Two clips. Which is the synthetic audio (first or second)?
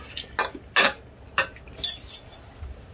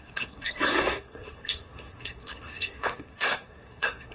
second